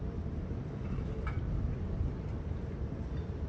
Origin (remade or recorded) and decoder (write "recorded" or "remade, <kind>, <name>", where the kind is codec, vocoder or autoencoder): remade, vocoder, BigVGAN v2